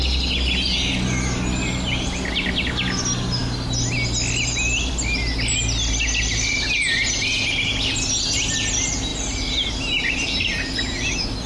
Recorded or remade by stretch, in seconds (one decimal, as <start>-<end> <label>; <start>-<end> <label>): 0.0-11.5 recorded